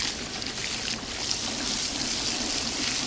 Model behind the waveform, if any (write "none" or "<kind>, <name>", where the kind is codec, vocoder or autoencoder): none